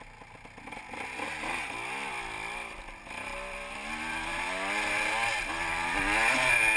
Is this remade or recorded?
recorded